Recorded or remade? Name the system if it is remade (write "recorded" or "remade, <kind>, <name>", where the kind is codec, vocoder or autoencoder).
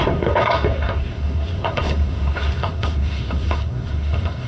remade, codec, SNAC